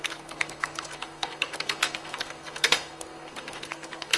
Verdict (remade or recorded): remade